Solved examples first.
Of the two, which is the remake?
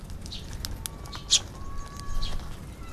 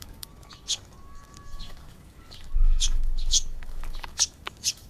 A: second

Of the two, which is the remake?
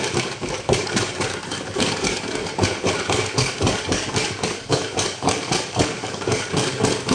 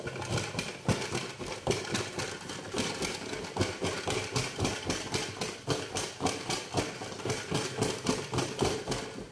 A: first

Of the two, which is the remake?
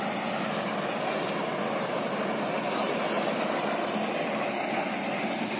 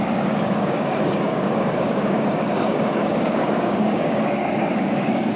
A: second